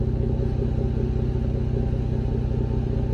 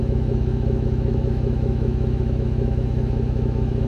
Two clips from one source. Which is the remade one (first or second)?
second